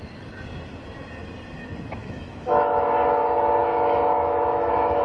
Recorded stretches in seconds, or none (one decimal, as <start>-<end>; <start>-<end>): 0.0-2.0; 2.8-3.6